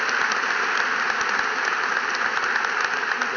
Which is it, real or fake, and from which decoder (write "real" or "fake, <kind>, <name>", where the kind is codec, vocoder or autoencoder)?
real